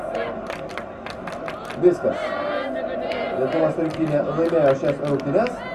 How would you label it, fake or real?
real